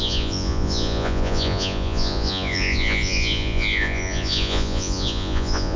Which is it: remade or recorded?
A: remade